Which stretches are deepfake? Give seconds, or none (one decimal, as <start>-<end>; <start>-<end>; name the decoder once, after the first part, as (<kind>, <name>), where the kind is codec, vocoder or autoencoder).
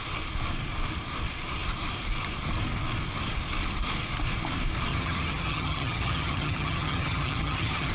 4.9-7.9 (vocoder, HiFi-GAN)